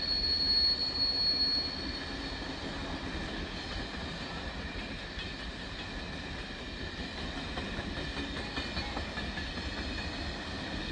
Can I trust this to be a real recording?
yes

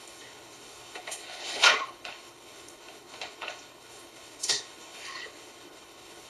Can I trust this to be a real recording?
no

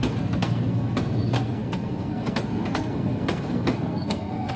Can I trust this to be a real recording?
no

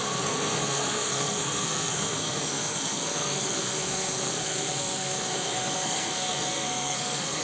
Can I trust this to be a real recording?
no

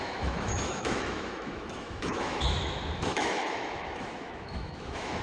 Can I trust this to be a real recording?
no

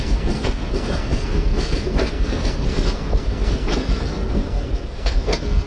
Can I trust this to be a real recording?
no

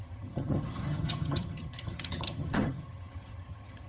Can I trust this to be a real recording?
no